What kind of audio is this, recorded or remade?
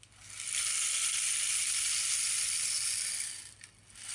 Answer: recorded